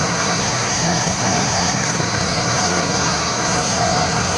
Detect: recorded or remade remade